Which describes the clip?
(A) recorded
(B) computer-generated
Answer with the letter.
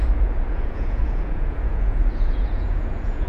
B